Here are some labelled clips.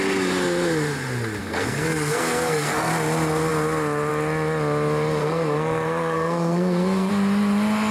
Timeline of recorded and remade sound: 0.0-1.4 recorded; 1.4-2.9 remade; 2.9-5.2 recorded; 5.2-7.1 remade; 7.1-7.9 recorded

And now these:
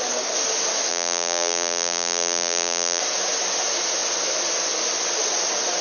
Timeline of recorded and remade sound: 0.0-0.9 recorded; 0.9-3.0 remade; 3.0-5.8 recorded